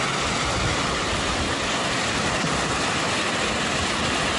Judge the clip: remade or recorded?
recorded